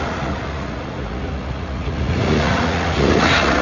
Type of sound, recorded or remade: remade